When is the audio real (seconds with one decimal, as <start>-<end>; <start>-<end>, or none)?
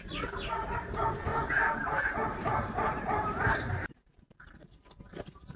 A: 0.0-1.3; 4.7-5.6